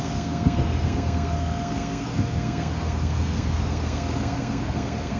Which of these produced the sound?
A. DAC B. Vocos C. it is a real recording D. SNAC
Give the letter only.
D